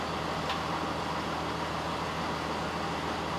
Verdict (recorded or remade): recorded